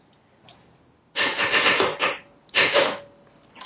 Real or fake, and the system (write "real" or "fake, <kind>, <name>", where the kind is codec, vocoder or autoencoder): real